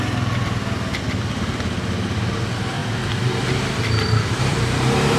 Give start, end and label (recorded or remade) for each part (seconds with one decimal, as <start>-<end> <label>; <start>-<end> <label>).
0.0-5.2 recorded